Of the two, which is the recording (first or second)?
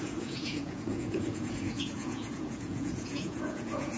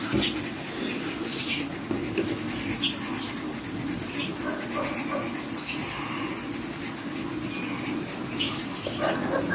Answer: second